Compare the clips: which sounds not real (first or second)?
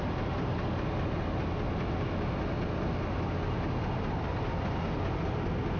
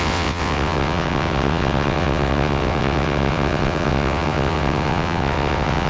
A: second